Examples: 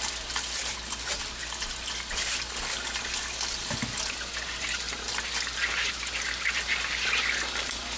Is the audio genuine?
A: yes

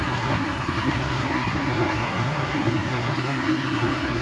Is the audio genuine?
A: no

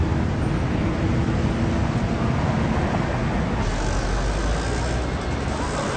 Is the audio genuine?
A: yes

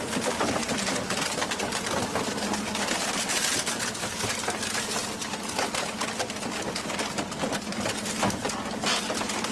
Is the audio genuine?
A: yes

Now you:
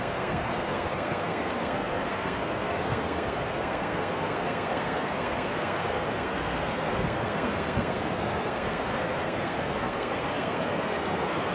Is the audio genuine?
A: no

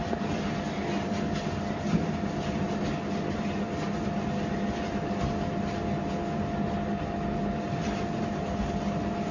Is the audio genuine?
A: yes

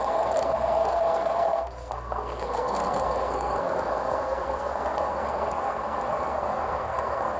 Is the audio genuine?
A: no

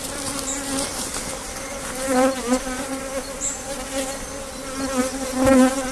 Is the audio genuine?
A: yes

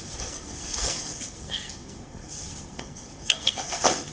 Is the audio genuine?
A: no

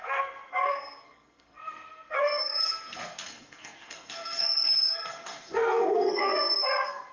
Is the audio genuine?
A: no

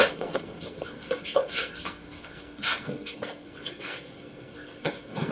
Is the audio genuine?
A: no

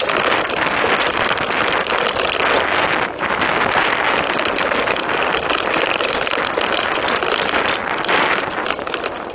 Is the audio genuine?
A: yes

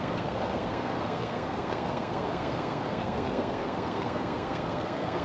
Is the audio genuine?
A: no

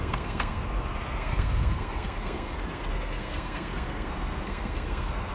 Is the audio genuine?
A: no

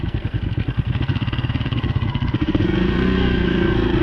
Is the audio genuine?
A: no